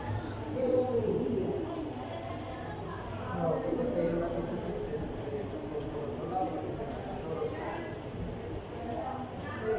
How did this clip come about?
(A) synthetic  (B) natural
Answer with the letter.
B